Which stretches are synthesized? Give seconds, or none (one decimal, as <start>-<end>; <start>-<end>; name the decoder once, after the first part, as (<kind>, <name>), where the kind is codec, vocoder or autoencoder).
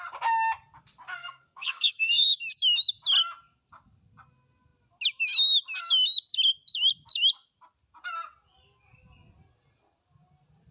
1.2-2.4 (codec, SNAC)